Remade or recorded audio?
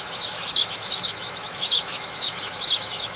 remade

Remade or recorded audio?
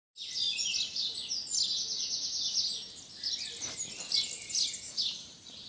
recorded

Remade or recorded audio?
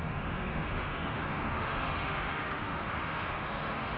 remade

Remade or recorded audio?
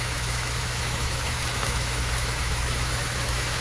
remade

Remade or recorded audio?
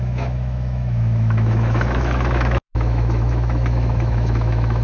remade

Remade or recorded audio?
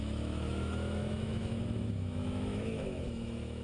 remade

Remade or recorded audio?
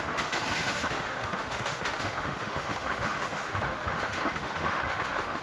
remade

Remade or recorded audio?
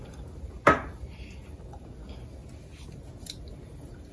recorded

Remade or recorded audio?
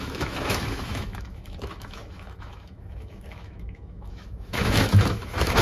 remade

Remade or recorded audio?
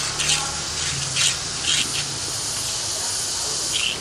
recorded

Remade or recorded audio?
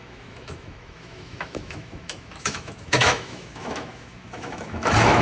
remade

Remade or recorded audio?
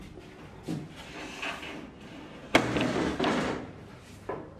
recorded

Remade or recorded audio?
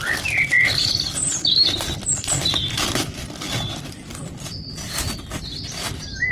recorded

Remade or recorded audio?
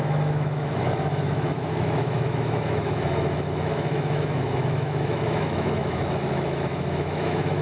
remade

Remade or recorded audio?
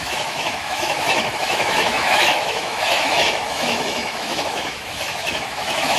remade